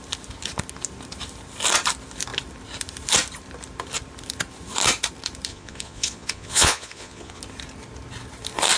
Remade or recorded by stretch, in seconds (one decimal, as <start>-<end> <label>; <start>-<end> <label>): 0.0-5.5 recorded; 5.5-7.4 remade; 7.4-8.8 recorded